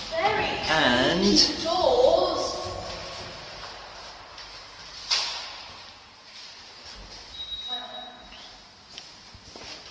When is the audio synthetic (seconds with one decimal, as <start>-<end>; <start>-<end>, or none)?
1.6-2.4; 3.0-5.9